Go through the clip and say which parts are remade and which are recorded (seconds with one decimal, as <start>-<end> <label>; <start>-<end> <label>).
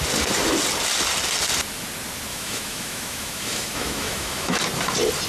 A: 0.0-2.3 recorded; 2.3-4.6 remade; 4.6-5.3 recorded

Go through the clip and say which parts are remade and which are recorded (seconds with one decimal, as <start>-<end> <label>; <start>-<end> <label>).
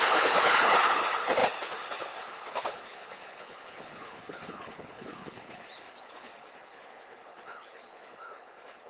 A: 0.0-8.9 remade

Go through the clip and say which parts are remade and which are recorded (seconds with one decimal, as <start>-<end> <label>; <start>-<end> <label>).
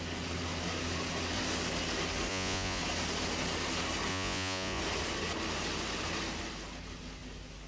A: 0.0-2.3 recorded; 2.3-2.8 remade; 2.8-4.1 recorded; 4.1-4.8 remade; 4.8-7.7 recorded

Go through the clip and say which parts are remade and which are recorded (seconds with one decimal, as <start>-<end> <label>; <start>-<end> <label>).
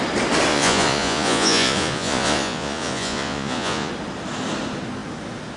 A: 0.0-0.5 recorded; 0.5-3.9 remade; 3.9-5.6 recorded